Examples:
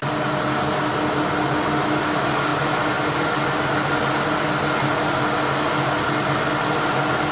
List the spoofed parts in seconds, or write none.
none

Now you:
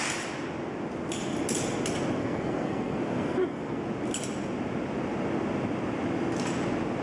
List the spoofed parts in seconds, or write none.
2.2-3.8 (codec, SNAC)

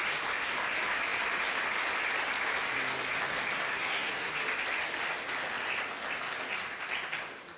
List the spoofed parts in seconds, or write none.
3.7-4.3 (codec, SNAC)

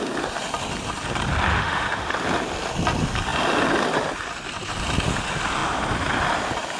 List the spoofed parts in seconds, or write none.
1.5-2.1 (autoencoder, DAC-VAE)